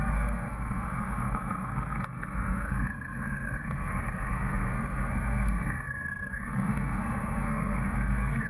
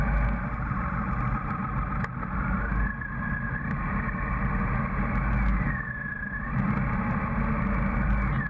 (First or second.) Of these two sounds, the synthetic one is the first